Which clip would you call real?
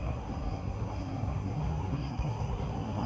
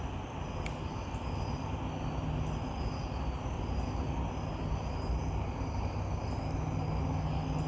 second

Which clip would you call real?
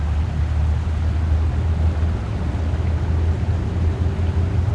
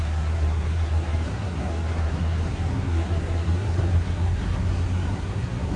first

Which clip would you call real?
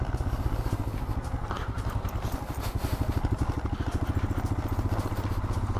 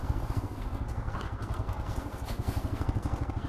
first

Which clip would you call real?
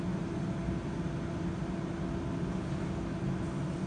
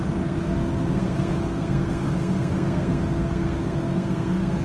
first